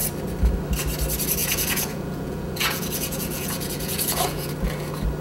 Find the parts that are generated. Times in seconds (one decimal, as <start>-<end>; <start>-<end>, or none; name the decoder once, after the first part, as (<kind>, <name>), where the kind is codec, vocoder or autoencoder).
1.4-4.5 (vocoder, Vocos)